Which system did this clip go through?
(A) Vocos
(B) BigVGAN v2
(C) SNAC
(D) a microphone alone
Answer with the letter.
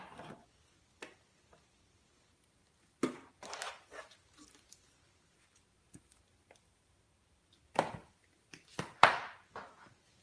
D